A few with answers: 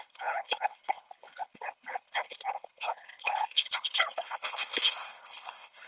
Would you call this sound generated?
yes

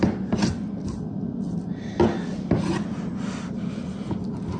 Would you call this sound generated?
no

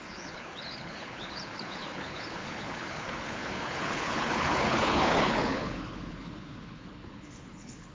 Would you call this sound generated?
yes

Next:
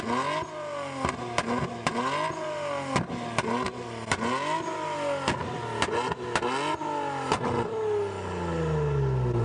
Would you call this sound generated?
no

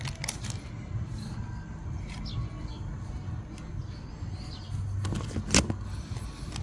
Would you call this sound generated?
no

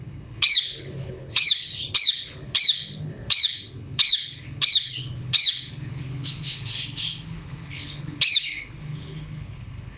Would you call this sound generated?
yes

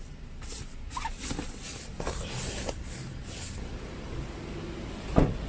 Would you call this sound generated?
no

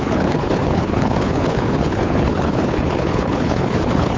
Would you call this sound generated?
yes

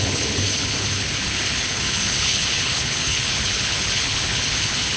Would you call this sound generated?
yes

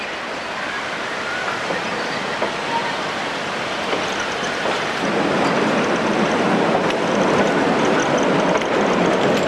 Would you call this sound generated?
no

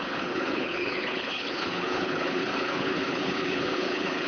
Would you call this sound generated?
yes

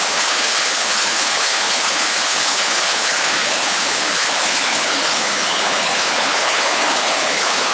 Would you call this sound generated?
yes